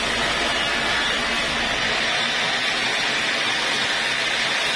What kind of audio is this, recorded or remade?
recorded